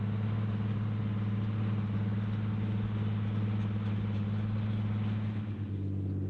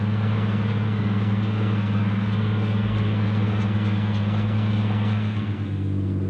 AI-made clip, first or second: second